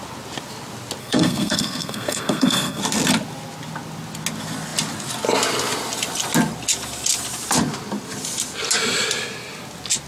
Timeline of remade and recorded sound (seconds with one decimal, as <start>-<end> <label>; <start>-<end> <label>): 0.0-1.0 recorded; 1.0-2.8 remade; 2.8-10.1 recorded